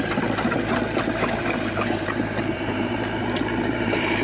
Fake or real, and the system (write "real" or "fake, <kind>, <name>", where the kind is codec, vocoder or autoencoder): fake, vocoder, BigVGAN v2